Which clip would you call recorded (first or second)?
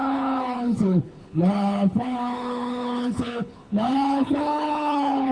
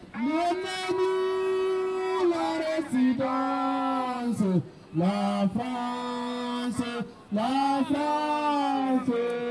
second